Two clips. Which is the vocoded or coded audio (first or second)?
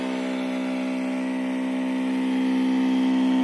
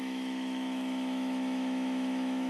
second